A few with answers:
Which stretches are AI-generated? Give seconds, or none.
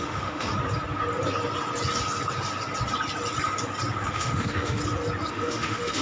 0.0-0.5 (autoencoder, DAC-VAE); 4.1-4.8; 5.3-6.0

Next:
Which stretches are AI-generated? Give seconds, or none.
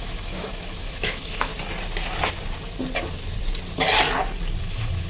0.0-1.5 (autoencoder, DAC-VAE); 4.6-5.1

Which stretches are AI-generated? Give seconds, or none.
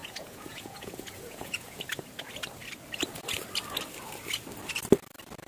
0.0-1.8 (vocoder, Vocos)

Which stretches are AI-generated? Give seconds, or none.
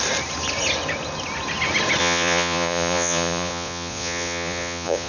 2.0-5.1 (vocoder, Vocos)